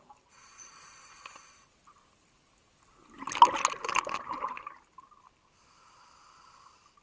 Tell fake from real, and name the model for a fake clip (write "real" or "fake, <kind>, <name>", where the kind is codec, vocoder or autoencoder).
real